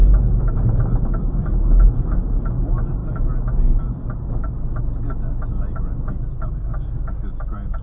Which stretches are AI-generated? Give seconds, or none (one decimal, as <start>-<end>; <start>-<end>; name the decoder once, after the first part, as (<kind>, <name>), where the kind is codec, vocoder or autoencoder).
none